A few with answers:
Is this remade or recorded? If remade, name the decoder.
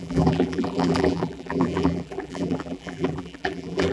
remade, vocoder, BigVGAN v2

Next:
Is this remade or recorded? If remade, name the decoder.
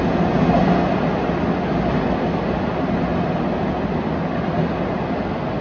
recorded